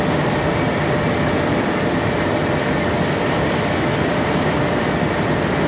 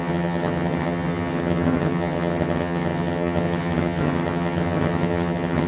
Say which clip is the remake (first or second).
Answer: second